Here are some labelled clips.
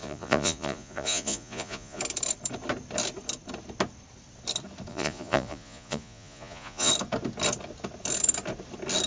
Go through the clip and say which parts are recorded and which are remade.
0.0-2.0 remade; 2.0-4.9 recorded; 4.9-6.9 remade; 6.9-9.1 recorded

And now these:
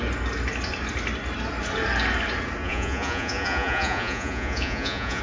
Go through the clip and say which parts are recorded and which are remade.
0.0-2.6 recorded; 2.6-5.2 remade

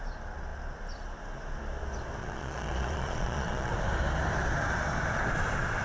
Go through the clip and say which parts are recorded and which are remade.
0.0-2.2 recorded; 2.2-3.7 remade; 3.7-5.8 recorded

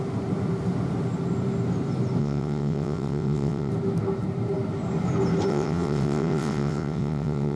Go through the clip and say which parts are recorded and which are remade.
0.0-2.2 recorded; 2.2-3.7 remade; 3.7-5.5 recorded; 5.5-7.6 remade

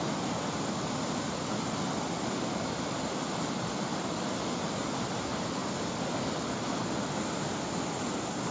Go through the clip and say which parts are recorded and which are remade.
0.0-8.5 recorded

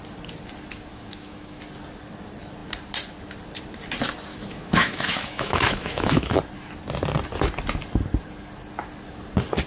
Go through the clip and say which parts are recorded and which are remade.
0.0-0.9 recorded; 0.9-1.6 remade; 1.6-4.3 recorded; 4.3-6.4 remade; 6.4-9.7 recorded

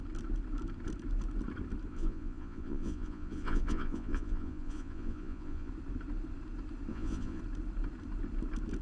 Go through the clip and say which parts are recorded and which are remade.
0.0-1.9 recorded; 1.9-5.7 remade; 5.7-6.9 recorded; 6.9-7.4 remade; 7.4-8.8 recorded